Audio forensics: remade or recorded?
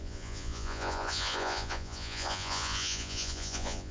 remade